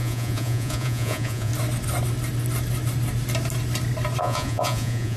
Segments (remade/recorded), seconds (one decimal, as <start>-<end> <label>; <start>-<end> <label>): 0.0-1.5 remade; 1.5-4.2 recorded; 4.2-5.2 remade